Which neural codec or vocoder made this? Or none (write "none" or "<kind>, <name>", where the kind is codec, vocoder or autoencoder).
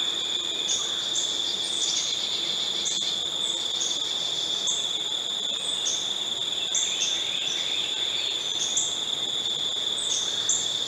none